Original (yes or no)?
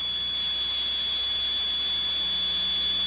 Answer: yes